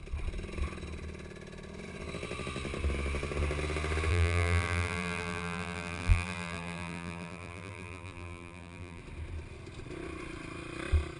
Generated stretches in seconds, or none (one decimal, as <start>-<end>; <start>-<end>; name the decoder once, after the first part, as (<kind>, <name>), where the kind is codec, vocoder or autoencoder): 4.1-9.0 (vocoder, BigVGAN v2)